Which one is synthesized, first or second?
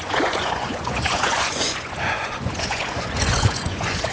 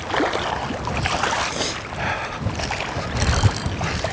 first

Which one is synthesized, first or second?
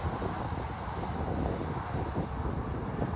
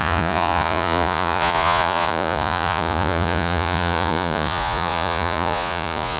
second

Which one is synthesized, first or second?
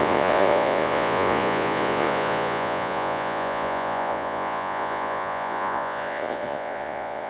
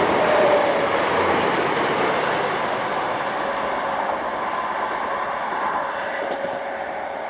first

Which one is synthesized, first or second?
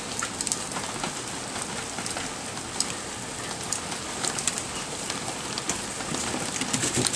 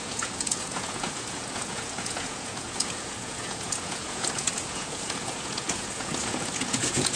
second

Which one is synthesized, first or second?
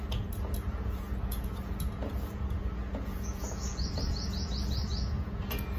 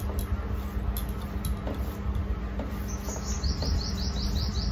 first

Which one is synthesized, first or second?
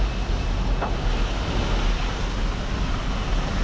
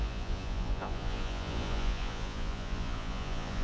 second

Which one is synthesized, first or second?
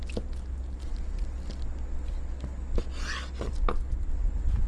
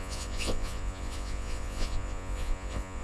second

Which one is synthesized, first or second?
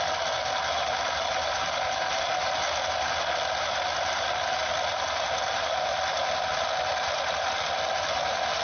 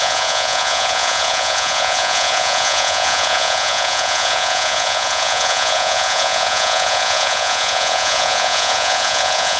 second